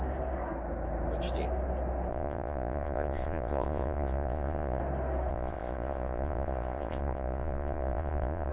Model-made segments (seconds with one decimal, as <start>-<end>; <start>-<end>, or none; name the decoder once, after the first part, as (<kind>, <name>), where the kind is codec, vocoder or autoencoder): 2.1-4.8 (vocoder, Vocos); 5.3-8.5